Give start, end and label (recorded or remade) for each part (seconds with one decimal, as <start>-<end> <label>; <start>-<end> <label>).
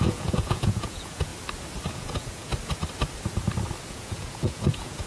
0.0-1.3 remade; 1.3-1.9 recorded; 1.9-2.5 remade; 2.5-3.9 recorded; 3.9-5.1 remade